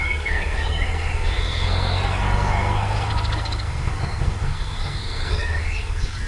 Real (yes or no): no